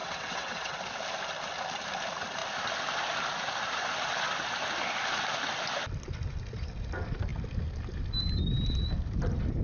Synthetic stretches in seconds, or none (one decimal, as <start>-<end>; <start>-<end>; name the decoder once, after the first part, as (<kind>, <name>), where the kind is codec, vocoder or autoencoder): 0.0-0.8 (vocoder, WaveNeXt)